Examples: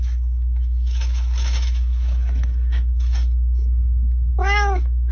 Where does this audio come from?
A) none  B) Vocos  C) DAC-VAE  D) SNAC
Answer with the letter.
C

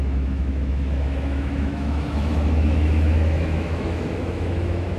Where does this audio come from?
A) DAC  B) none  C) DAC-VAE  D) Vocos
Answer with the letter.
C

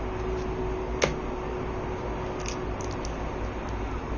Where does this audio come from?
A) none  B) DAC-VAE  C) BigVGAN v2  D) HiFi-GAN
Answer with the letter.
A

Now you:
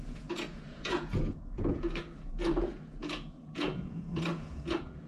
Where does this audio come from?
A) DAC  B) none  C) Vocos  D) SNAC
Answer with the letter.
C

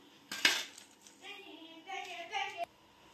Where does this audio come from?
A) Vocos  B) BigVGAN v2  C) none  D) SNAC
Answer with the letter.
C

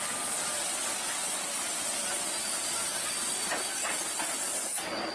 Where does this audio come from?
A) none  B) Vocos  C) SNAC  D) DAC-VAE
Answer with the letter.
A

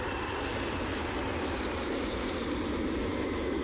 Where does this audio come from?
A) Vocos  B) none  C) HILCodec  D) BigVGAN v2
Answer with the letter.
D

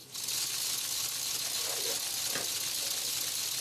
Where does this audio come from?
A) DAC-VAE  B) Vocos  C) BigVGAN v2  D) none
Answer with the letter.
D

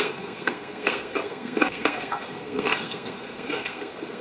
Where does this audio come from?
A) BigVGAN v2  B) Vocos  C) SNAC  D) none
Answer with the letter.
C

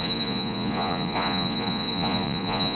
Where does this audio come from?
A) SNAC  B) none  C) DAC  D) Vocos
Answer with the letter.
D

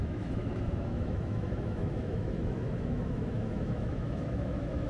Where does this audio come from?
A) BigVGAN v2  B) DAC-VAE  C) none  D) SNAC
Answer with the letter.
B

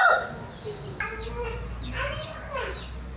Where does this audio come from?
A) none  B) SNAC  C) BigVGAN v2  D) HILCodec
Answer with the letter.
A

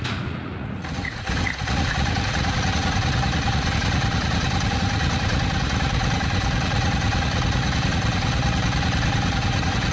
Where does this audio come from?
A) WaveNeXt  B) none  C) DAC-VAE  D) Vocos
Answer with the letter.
D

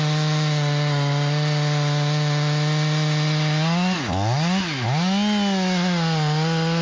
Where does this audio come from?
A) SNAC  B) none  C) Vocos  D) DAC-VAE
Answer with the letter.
B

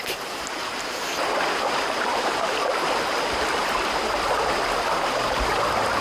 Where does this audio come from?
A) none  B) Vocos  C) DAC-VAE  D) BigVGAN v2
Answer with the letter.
A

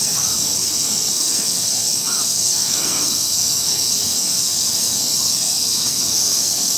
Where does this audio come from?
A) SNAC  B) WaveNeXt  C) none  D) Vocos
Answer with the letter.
A